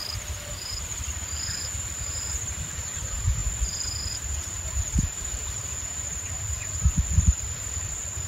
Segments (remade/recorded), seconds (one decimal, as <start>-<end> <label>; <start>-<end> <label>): 0.0-0.5 recorded; 0.5-8.3 remade